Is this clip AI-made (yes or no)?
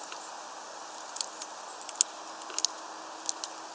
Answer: no